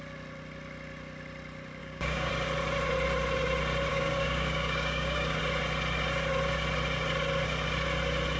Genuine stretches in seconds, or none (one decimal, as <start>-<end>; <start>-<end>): 0.0-1.8; 2.3-3.9; 5.4-8.4